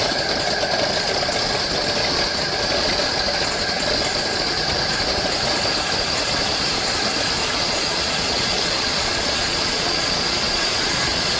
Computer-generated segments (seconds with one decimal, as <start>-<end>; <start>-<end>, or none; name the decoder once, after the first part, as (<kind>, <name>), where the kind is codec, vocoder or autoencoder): 7.4-11.4 (vocoder, Vocos)